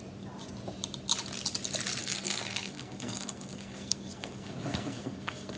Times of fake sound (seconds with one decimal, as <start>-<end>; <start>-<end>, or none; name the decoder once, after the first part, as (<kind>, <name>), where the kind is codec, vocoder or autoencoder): 2.0-5.6 (codec, SNAC)